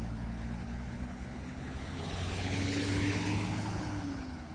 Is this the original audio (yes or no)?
no